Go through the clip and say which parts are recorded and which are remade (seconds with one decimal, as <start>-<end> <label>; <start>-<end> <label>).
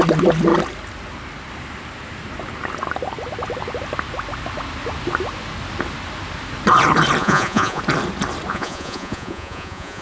0.0-7.2 recorded; 7.2-7.8 remade; 7.8-8.5 recorded; 8.5-10.0 remade